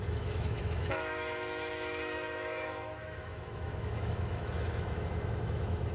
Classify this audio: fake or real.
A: fake